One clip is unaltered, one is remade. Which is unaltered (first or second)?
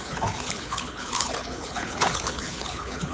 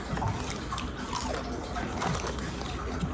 second